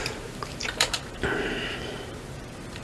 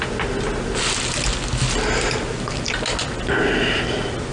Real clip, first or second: second